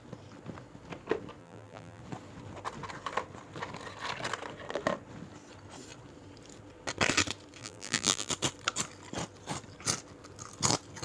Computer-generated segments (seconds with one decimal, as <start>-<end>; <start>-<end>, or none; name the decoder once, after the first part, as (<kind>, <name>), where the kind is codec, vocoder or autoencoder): 1.4-2.0 (vocoder, BigVGAN v2); 7.6-8.3